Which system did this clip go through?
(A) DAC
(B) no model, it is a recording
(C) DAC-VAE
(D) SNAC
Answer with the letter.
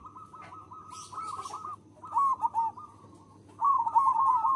B